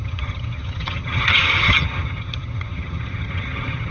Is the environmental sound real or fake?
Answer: fake